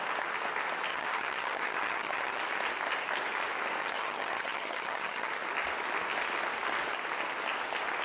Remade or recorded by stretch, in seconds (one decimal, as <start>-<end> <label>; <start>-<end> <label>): 0.0-0.9 recorded; 0.9-2.4 remade; 2.4-3.8 recorded; 3.8-5.3 remade; 5.3-8.0 recorded